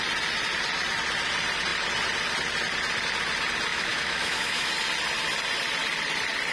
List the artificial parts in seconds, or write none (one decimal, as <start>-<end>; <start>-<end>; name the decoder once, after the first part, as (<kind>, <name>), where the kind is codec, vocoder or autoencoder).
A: 3.7-4.7 (autoencoder, DAC-VAE)